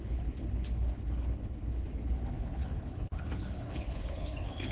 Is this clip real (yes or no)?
no